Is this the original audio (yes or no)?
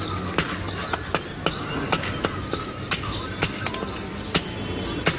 yes